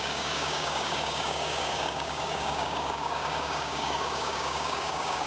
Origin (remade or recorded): remade